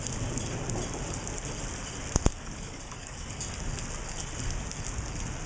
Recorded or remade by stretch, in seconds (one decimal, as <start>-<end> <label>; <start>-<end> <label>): 0.0-2.3 recorded; 2.3-3.4 remade; 3.4-5.5 recorded